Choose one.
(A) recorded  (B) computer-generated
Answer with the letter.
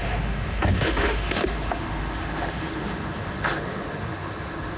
B